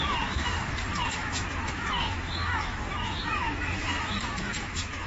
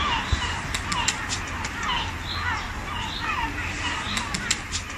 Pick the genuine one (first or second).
second